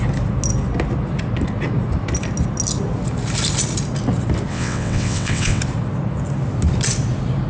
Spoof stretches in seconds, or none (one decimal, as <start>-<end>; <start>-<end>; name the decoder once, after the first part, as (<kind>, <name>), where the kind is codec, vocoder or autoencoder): 4.5-5.6 (vocoder, WaveNeXt)